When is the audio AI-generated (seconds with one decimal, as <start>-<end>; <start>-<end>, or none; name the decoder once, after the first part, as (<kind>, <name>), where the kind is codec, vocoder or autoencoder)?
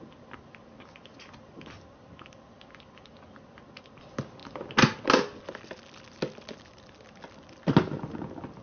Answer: none